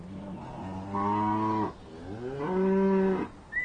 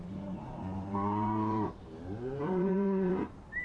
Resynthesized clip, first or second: second